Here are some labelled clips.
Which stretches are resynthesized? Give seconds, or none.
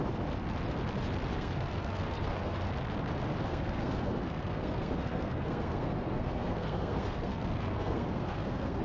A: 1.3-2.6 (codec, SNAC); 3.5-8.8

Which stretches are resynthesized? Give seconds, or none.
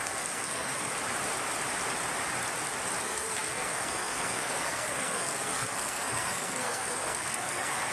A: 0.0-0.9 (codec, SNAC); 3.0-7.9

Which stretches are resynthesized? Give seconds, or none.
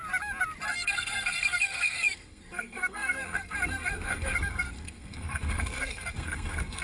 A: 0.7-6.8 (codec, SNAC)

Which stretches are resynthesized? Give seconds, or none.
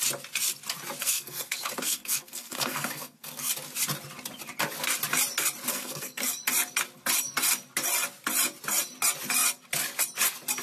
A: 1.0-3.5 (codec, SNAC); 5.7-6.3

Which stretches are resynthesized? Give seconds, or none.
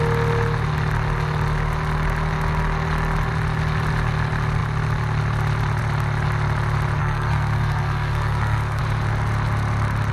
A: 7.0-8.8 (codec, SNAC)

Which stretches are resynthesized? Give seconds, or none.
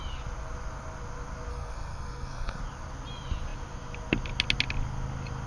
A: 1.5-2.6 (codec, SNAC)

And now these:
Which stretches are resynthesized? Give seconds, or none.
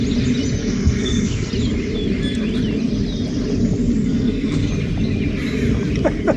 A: 0.6-1.5 (codec, SNAC); 4.0-4.7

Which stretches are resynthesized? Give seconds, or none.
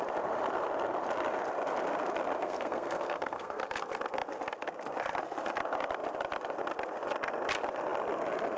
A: 2.4-3.6 (codec, SNAC)